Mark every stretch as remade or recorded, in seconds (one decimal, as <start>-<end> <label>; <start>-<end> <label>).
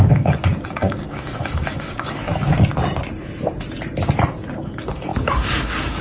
0.0-2.5 remade; 2.5-4.6 recorded; 4.6-6.0 remade